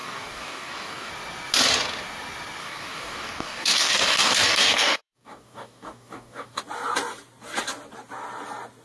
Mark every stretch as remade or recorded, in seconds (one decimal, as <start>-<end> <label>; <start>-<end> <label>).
0.0-1.1 remade; 1.1-2.6 recorded; 2.6-6.6 remade; 6.6-8.8 recorded